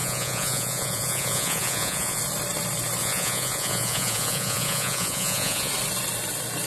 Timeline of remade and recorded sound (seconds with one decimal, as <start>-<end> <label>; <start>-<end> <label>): 0.0-2.2 remade; 2.2-3.0 recorded; 3.0-5.7 remade; 5.7-6.7 recorded